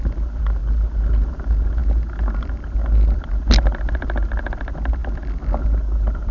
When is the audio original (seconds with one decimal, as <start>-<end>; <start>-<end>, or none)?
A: 0.0-6.3